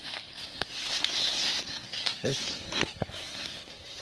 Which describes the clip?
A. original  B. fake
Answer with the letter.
B